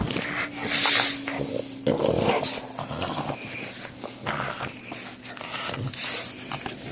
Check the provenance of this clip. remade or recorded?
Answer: recorded